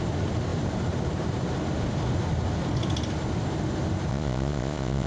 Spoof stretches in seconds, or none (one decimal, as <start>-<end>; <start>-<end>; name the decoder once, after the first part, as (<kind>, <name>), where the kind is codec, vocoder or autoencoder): 4.1-5.1 (vocoder, Vocos)